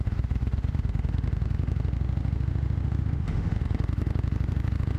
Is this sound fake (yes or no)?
yes